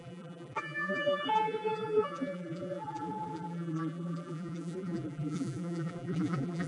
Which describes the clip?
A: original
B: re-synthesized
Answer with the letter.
B